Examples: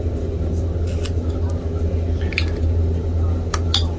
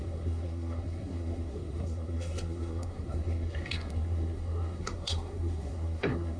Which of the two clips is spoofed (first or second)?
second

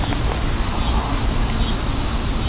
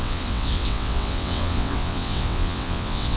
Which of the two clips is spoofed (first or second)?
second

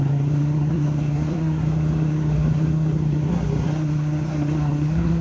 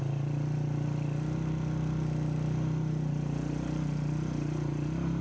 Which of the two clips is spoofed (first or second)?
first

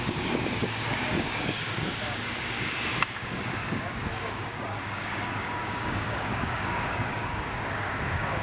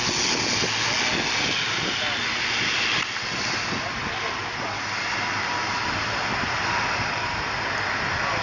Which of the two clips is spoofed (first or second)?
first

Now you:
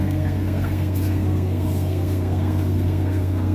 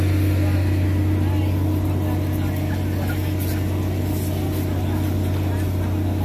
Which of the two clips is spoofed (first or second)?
first